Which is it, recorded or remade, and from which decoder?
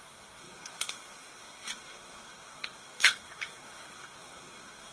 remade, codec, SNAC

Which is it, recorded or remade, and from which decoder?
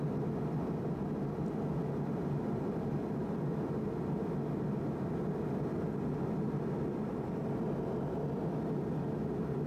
recorded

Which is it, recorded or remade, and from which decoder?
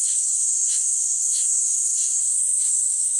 remade, codec, SNAC